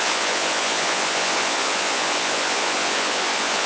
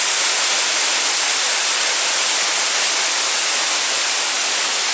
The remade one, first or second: first